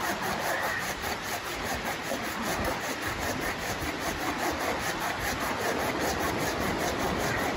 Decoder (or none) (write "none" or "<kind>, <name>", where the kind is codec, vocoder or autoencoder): none